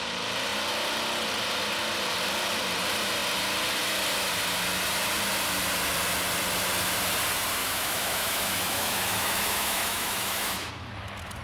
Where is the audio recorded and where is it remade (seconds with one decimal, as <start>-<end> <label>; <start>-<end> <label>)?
0.0-7.6 recorded; 7.6-10.7 remade; 10.7-11.4 recorded